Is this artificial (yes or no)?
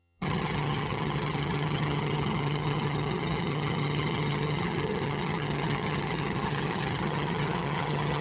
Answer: yes